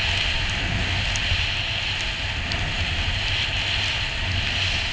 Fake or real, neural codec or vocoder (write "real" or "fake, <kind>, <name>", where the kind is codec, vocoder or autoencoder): real